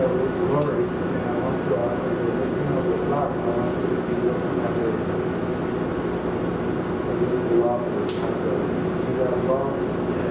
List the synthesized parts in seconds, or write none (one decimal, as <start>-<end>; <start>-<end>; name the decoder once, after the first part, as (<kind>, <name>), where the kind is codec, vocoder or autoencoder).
none